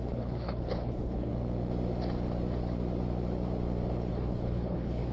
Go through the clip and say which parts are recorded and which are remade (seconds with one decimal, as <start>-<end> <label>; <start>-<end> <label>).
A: 0.0-1.3 remade; 1.3-4.1 recorded; 4.1-5.1 remade